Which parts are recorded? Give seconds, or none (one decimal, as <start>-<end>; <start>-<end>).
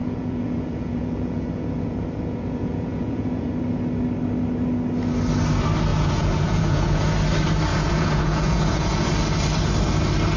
3.5-5.9; 7.0-7.7; 9.1-10.4